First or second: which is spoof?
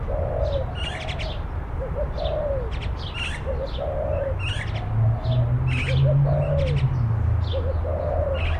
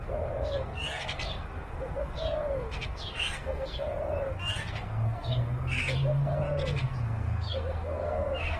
second